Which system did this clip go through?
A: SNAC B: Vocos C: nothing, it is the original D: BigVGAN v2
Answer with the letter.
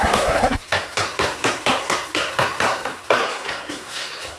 A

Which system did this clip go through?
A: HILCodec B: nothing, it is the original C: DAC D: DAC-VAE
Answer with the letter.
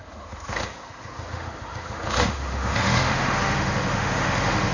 D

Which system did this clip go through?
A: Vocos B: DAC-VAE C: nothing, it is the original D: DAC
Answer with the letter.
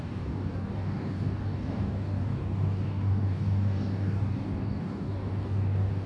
D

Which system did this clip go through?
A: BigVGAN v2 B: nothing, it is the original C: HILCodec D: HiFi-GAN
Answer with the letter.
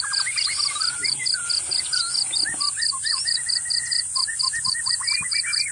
B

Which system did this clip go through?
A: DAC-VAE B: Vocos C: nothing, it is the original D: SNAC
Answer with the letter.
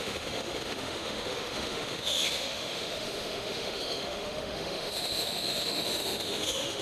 A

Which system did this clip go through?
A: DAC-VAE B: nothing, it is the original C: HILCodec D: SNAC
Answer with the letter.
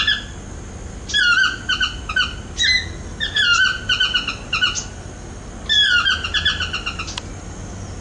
B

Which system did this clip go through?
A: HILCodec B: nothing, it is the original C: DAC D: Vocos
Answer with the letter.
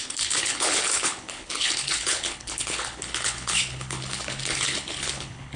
A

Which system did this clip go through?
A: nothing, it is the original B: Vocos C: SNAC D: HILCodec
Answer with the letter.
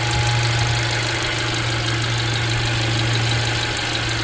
A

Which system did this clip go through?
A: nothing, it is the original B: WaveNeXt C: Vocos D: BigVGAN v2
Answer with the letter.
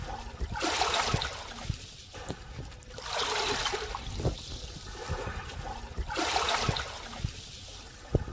A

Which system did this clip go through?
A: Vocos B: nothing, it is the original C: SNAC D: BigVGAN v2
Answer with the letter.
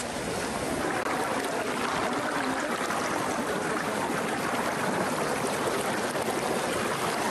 B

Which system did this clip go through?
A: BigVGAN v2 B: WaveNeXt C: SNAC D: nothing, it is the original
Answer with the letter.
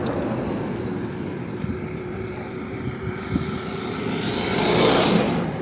D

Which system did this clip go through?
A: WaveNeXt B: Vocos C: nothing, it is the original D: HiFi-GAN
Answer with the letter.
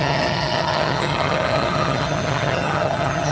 D